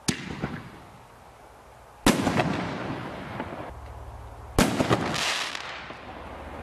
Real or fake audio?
real